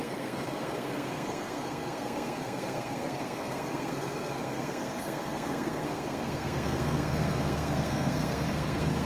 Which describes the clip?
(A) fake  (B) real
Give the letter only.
A